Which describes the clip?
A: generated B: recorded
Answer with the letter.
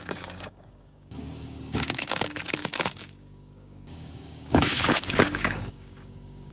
A